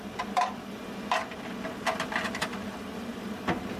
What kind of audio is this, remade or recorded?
recorded